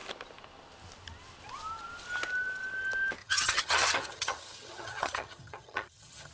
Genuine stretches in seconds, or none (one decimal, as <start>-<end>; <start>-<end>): 0.0-3.2